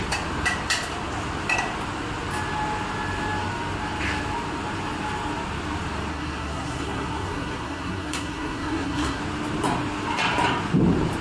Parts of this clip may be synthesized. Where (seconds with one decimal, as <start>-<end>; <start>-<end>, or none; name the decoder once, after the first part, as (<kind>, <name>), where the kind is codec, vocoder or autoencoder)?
6.1-9.2 (codec, SNAC)